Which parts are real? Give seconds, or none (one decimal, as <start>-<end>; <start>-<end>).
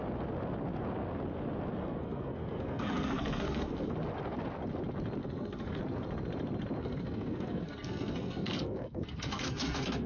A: 0.0-1.8; 3.9-5.2; 5.8-6.8